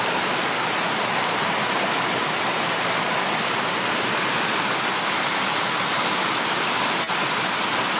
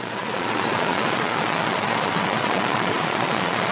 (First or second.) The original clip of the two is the first